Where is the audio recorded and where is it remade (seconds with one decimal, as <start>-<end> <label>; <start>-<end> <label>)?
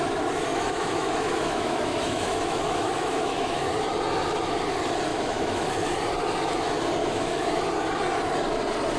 0.0-0.5 recorded; 0.5-3.7 remade; 3.7-5.1 recorded; 5.1-5.7 remade; 5.7-7.0 recorded; 7.0-7.5 remade; 7.5-9.0 recorded